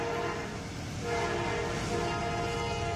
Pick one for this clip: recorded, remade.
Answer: recorded